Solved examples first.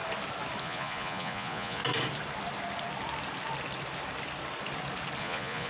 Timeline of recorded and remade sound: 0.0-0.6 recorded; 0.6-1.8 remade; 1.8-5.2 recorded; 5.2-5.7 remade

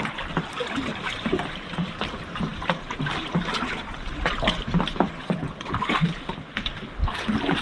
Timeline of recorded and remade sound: 0.0-0.9 recorded; 0.9-2.1 remade; 2.1-2.5 recorded; 2.5-6.7 remade; 6.7-7.6 recorded